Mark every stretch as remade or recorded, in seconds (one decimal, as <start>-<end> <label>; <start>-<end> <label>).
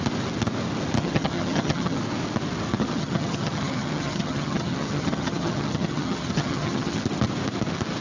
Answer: 0.0-1.0 recorded; 1.0-2.0 remade; 2.0-2.8 recorded; 2.8-7.0 remade; 7.0-8.0 recorded